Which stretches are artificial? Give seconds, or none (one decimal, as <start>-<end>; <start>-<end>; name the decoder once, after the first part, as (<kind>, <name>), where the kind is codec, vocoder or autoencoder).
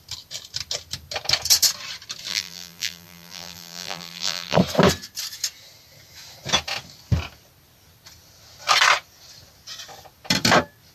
2.3-4.6 (vocoder, BigVGAN v2)